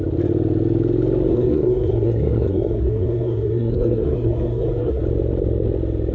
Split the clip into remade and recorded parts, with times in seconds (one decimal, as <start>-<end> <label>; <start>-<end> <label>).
0.0-1.3 recorded; 1.3-5.0 remade; 5.0-6.1 recorded

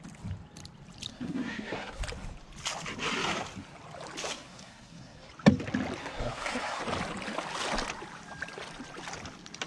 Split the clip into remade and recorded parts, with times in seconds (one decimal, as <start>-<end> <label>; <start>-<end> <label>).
0.0-1.1 recorded; 1.1-2.0 remade; 2.0-4.3 recorded; 4.3-5.3 remade; 5.3-6.0 recorded; 6.0-6.8 remade; 6.8-9.7 recorded

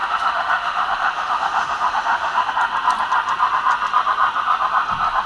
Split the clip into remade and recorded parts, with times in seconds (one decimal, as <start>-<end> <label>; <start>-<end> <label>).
0.0-2.5 remade; 2.5-5.3 recorded

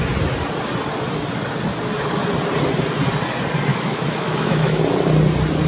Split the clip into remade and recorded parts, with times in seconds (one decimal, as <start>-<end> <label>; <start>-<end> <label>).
0.0-3.7 recorded; 3.7-4.8 remade; 4.8-5.7 recorded